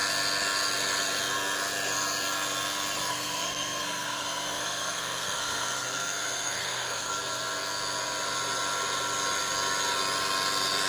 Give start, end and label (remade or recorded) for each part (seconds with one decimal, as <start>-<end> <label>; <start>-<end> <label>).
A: 0.0-3.1 recorded; 3.1-7.1 remade; 7.1-10.9 recorded